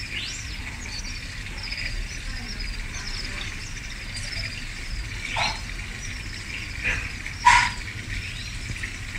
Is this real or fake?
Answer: real